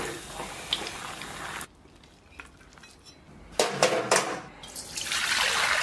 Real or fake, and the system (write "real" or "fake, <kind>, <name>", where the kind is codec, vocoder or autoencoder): real